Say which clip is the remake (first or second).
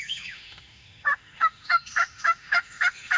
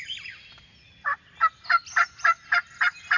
first